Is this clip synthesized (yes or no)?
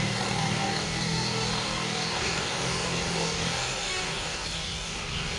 yes